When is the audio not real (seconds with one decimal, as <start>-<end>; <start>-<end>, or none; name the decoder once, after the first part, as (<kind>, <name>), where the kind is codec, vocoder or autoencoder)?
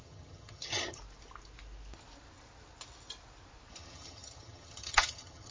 0.0-1.0 (vocoder, HiFi-GAN); 3.7-5.5